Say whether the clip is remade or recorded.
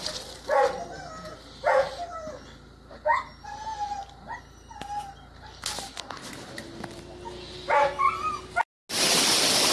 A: recorded